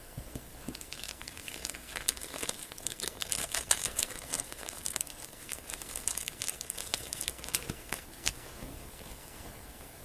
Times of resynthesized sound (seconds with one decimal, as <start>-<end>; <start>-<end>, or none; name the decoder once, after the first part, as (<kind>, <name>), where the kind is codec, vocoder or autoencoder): 0.0-10.0 (codec, SNAC)